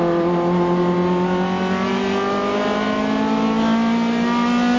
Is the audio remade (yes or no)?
no